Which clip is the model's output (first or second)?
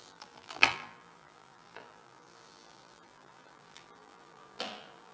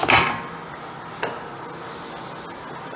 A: first